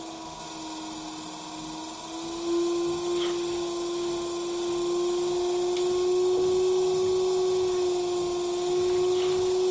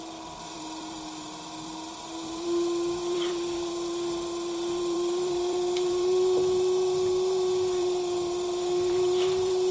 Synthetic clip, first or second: second